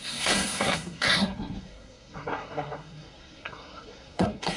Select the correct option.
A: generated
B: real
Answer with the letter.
A